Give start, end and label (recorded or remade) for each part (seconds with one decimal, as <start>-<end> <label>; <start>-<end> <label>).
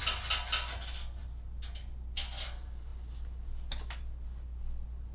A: 0.0-5.1 recorded